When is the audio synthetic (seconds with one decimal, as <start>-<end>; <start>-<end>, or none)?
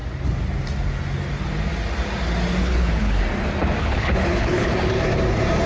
2.6-3.2; 3.8-4.7